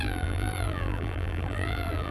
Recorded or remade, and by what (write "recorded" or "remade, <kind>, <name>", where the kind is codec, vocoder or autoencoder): remade, vocoder, BigVGAN v2